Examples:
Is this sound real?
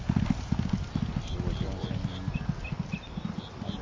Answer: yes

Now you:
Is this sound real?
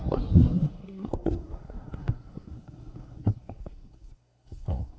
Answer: no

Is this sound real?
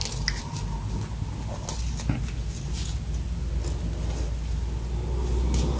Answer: yes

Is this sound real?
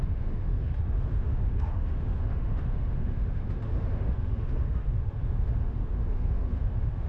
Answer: no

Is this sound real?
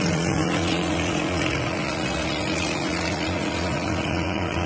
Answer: no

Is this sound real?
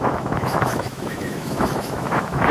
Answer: no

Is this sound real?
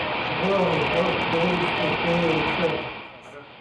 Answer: yes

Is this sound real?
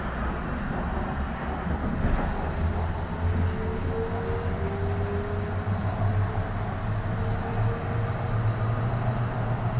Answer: yes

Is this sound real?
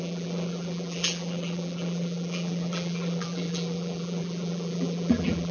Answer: no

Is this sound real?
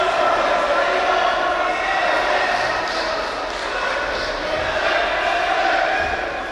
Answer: yes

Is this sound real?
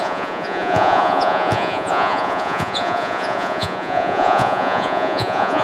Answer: no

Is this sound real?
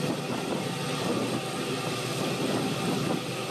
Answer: yes